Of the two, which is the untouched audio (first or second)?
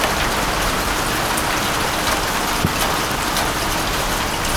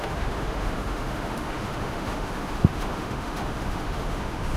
first